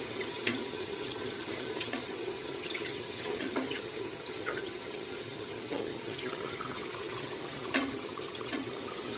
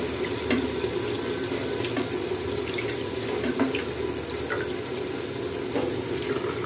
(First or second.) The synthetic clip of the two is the first